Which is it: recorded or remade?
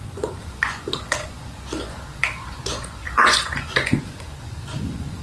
remade